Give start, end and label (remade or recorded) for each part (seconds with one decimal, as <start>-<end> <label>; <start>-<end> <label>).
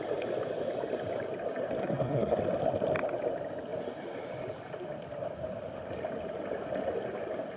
0.0-1.8 recorded; 1.8-2.4 remade; 2.4-7.6 recorded